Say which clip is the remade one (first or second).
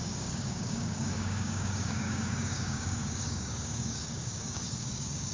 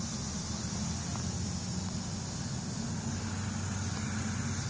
first